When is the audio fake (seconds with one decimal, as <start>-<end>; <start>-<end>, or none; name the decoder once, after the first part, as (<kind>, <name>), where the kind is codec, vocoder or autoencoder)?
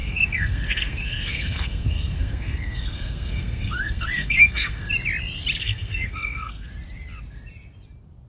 0.0-4.9 (codec, SNAC); 5.6-6.7